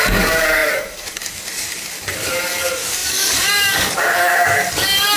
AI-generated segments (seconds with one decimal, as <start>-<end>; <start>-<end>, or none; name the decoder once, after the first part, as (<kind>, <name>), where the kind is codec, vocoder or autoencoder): 0.0-5.2 (codec, DAC)